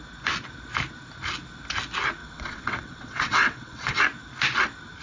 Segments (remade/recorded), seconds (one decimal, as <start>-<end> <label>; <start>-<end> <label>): 0.0-2.2 recorded; 2.2-4.0 remade; 4.0-5.0 recorded